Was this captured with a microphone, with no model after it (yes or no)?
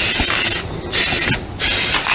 yes